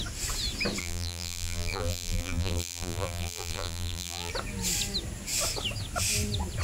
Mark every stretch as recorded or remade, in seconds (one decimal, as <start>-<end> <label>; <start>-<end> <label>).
0.0-0.8 recorded; 0.8-4.3 remade; 4.3-6.6 recorded